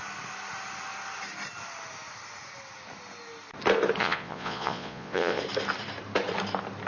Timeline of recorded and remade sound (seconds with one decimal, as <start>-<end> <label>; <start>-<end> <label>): 0.0-4.0 recorded; 4.0-5.4 remade; 5.4-6.9 recorded